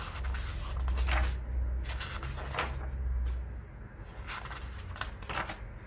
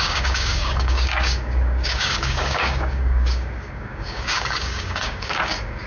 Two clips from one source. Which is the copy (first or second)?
second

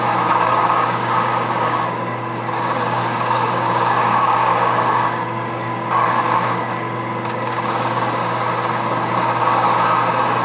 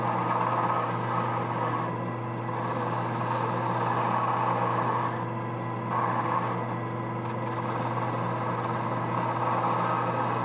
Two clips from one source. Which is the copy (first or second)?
first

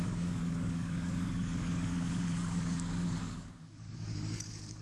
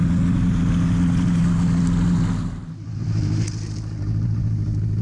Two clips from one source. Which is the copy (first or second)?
first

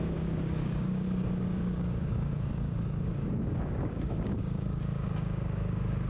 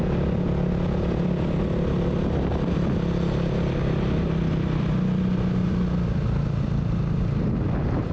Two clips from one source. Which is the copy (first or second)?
first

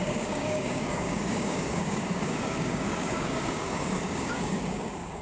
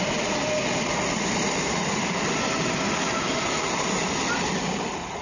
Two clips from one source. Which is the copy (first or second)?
first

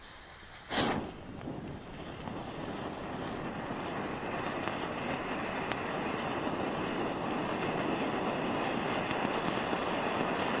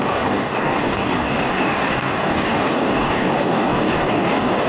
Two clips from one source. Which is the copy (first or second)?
second